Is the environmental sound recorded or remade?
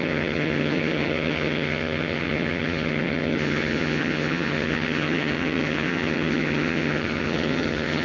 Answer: remade